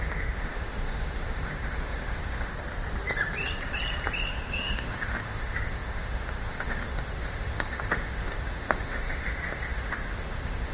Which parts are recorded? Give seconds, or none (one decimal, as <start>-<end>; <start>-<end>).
2.5-4.3